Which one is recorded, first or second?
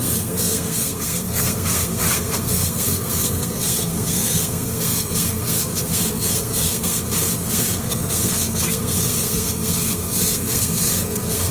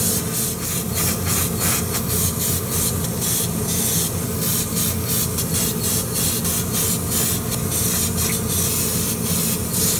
second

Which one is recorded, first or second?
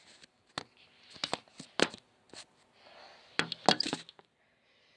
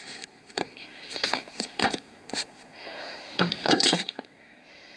first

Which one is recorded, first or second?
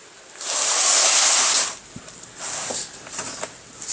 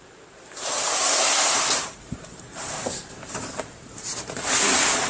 first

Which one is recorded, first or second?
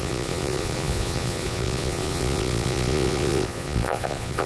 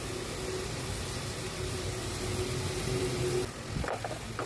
second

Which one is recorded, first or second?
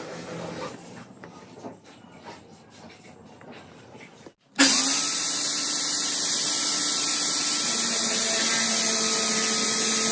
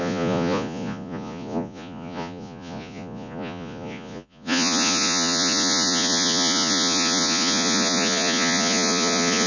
first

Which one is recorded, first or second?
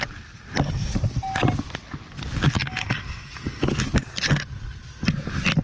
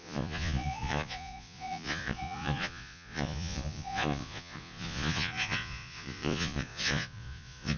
first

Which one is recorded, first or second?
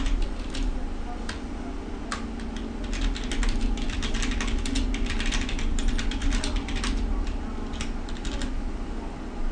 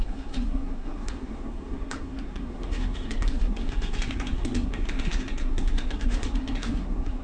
first